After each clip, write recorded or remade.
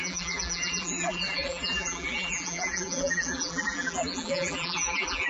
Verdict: remade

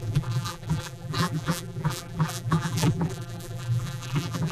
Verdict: remade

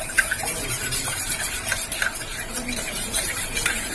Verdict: remade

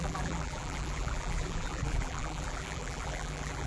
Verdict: remade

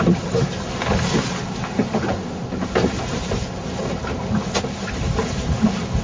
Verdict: recorded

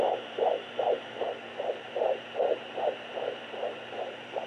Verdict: remade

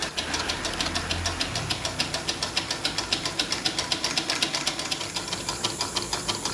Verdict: recorded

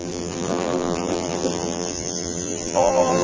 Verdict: remade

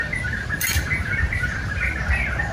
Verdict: remade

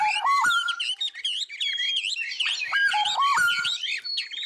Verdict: recorded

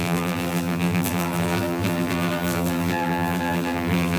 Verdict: remade